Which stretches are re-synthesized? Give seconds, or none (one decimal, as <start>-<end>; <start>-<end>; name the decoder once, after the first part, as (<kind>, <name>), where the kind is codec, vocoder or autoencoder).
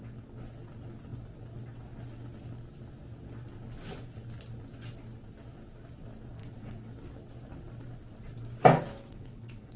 6.4-6.9 (vocoder, WaveNeXt); 9.1-9.8